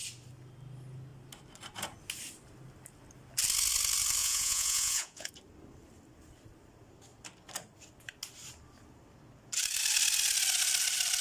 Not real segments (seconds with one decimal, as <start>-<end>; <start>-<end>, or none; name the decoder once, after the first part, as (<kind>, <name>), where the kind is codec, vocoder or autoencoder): 4.2-5.3 (vocoder, Vocos)

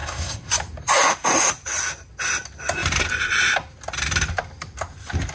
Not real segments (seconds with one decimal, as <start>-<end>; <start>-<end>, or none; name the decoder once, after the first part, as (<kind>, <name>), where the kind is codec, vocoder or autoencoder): 0.0-0.5 (codec, SNAC)

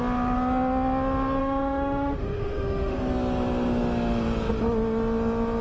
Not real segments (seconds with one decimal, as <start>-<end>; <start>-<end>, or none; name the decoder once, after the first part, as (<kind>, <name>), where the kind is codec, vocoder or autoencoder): 1.4-3.0 (autoencoder, DAC-VAE)

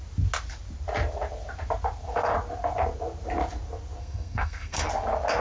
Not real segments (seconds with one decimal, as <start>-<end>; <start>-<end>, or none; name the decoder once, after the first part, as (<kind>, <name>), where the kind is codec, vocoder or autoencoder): 4.0-4.9 (codec, SNAC)

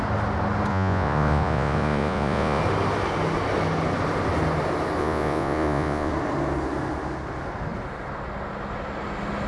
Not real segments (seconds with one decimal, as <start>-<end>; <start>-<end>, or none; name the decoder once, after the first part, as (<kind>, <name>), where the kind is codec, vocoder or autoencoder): 0.7-2.6 (vocoder, Vocos); 5.0-6.1

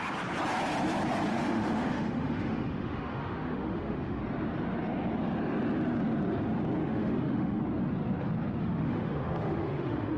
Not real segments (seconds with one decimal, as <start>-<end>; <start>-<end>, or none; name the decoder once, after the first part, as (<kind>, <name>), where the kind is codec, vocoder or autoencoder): 1.3-4.2 (autoencoder, DAC-VAE); 6.8-7.6; 8.6-10.2

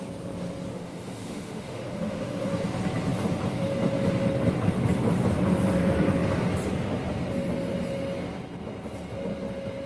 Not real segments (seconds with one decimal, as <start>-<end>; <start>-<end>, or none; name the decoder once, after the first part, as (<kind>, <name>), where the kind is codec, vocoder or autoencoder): 0.7-2.5 (autoencoder, DAC-VAE)

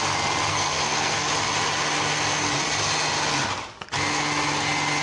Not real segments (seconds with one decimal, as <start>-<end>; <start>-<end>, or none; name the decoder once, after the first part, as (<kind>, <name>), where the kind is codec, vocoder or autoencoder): 0.5-1.3 (codec, SNAC)